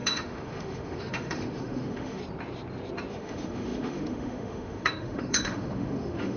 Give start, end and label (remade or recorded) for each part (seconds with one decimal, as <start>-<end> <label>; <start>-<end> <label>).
0.0-2.2 remade; 2.2-3.1 recorded; 3.1-6.4 remade